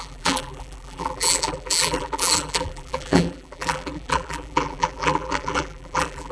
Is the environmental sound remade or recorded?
remade